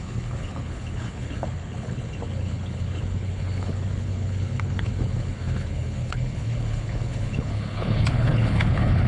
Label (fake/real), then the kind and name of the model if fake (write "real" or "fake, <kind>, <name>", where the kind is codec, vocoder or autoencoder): fake, codec, HILCodec